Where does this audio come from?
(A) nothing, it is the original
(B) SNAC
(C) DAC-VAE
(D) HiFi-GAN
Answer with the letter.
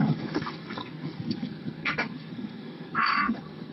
B